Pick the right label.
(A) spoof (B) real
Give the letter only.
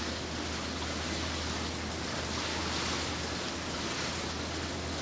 B